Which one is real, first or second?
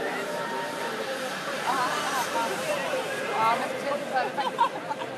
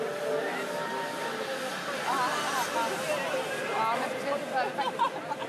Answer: second